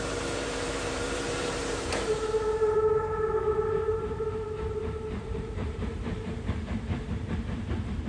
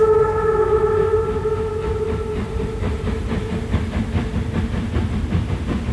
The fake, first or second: first